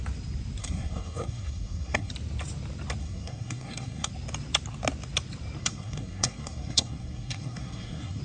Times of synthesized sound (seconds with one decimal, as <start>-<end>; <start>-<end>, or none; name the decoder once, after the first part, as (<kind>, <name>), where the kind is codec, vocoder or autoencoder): 0.6-2.1 (codec, SNAC); 3.0-4.1; 5.6-8.2